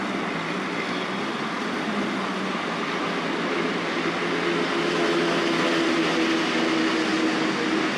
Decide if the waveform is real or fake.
real